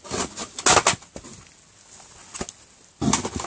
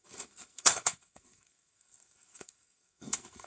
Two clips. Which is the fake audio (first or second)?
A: second